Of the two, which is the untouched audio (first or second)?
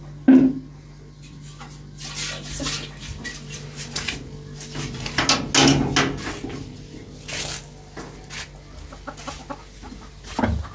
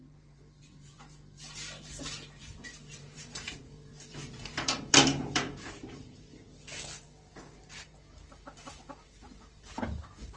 first